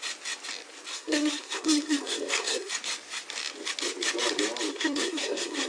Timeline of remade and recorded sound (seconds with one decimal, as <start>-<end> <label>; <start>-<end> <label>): 0.0-0.9 recorded; 0.9-2.7 remade; 2.7-4.7 recorded; 4.7-5.7 remade